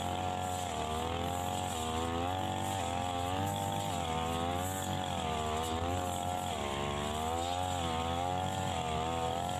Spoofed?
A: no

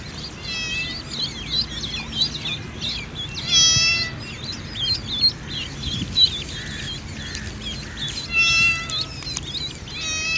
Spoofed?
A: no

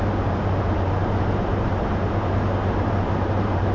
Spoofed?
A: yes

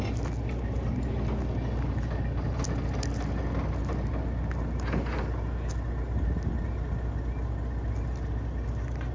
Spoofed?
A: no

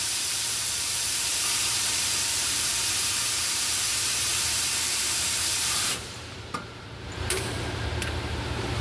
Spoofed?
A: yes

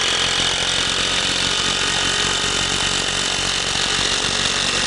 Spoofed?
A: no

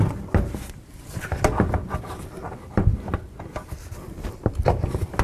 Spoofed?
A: no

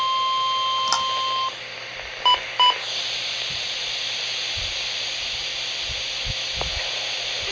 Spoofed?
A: no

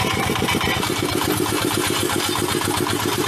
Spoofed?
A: no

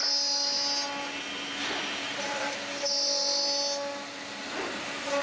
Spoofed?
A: no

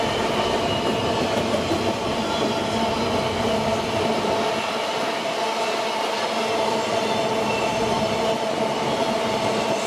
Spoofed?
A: no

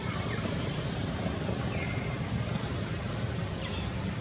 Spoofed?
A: yes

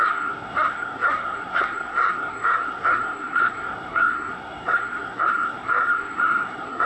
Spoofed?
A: yes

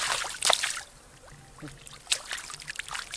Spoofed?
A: no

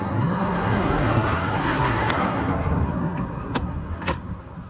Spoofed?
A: yes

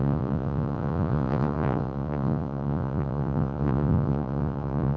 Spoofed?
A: yes